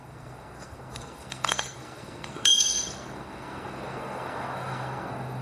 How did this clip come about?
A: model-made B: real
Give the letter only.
A